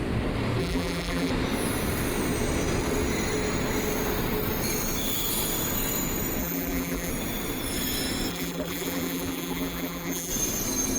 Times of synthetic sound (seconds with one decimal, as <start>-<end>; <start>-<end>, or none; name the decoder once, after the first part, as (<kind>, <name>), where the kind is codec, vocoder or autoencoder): 0.6-1.3 (vocoder, BigVGAN v2); 6.4-7.1; 8.3-10.3